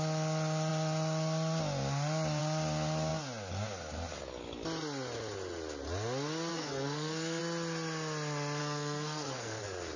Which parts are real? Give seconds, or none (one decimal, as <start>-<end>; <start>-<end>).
0.0-6.5; 7.4-8.6; 9.6-10.0